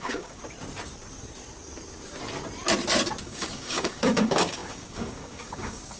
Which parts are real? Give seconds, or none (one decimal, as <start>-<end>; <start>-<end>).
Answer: 0.4-3.2